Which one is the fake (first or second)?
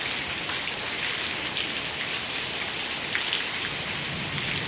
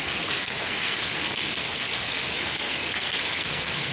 second